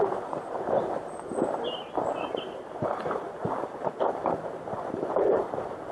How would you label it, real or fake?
fake